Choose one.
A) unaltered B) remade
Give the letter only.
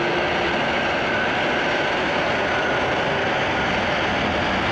A